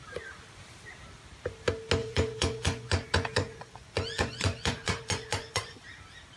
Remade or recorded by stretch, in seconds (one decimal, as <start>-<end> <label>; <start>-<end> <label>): 0.0-2.0 recorded; 2.0-5.8 remade; 5.8-6.4 recorded